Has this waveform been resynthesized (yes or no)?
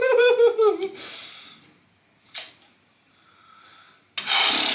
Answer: no